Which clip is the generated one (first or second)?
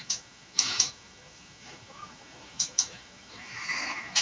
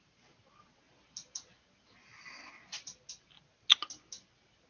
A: first